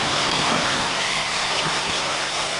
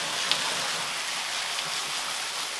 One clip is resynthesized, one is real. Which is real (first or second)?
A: second